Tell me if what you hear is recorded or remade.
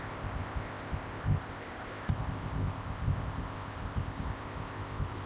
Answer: remade